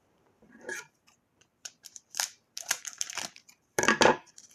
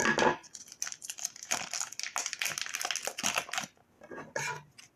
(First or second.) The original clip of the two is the second